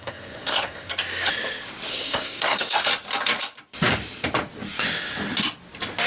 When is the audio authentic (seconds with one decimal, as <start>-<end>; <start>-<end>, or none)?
0.9-1.9; 2.9-6.1